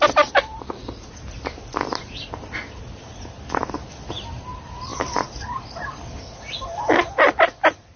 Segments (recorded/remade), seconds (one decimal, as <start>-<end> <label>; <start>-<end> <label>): 0.0-0.5 remade; 0.5-4.1 recorded; 4.1-4.9 remade; 4.9-5.7 recorded; 5.7-8.0 remade